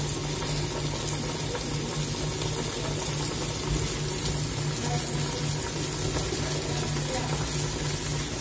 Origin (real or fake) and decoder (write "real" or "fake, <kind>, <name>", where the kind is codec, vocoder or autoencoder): real